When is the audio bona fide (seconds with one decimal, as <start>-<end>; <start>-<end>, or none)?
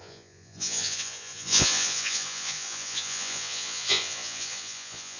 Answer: none